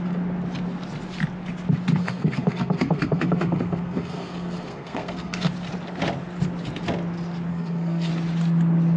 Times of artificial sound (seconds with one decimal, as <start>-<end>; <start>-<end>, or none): 2.0-5.5; 7.5-8.1